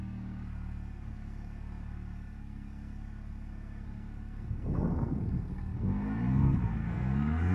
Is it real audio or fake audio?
fake